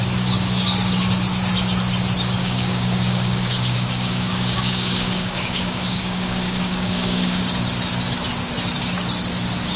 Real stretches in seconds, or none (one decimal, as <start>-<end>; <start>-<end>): 0.0-2.4; 7.4-9.8